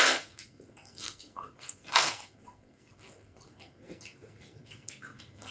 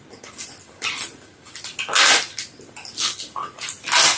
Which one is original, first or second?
second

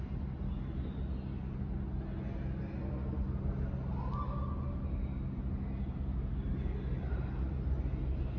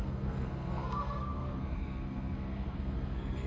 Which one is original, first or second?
first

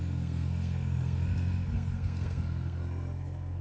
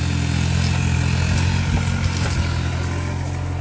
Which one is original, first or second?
second